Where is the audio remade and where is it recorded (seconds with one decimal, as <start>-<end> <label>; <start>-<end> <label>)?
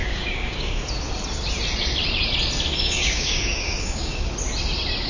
0.0-0.8 remade; 0.8-2.7 recorded; 2.7-4.3 remade; 4.3-5.1 recorded